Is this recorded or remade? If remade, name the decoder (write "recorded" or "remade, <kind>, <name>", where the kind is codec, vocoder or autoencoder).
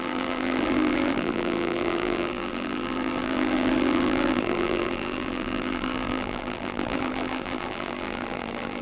remade, vocoder, BigVGAN v2